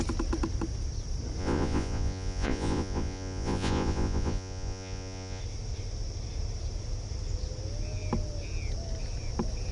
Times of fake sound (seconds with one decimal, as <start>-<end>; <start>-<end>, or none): 1.4-5.4